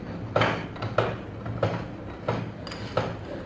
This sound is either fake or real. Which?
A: real